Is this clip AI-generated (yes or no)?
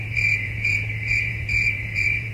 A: yes